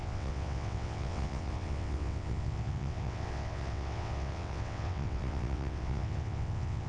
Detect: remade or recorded remade